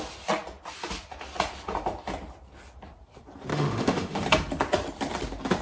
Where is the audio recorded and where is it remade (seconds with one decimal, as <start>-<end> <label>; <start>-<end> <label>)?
0.0-3.5 recorded; 3.5-4.2 remade; 4.2-5.6 recorded